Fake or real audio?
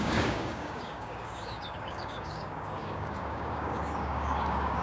fake